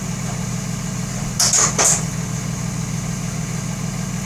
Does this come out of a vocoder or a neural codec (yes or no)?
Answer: no